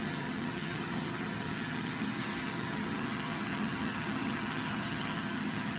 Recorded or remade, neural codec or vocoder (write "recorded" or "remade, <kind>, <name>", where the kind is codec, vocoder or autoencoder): remade, vocoder, HiFi-GAN